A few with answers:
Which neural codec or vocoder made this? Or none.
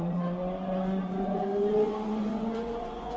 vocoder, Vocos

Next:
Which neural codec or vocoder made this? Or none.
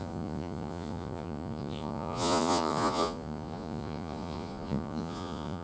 vocoder, Vocos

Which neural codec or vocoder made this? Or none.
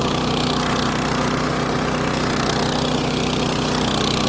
none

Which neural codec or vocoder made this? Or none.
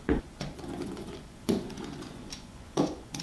vocoder, Vocos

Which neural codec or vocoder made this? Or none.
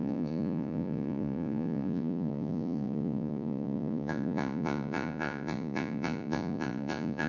vocoder, Vocos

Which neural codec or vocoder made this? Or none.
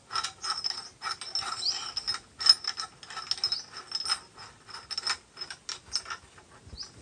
none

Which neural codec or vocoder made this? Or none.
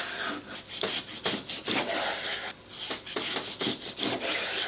none